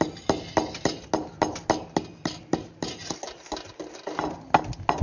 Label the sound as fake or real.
real